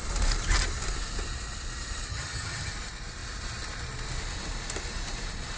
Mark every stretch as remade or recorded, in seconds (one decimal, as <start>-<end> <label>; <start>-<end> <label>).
0.0-2.1 recorded; 2.1-2.7 remade; 2.7-5.6 recorded